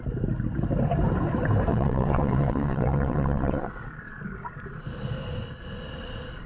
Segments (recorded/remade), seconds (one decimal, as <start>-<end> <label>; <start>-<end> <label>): 0.0-1.7 recorded; 1.7-3.7 remade; 3.7-6.5 recorded